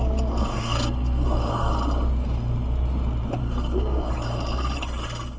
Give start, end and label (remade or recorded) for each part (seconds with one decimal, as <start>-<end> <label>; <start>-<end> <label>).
0.0-0.5 recorded; 0.5-1.7 remade; 1.7-3.4 recorded; 3.4-4.1 remade; 4.1-5.4 recorded